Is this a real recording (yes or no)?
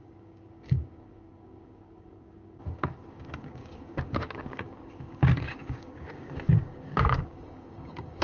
no